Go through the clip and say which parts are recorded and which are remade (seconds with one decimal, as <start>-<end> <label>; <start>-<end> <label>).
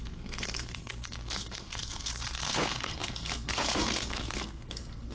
0.0-5.1 remade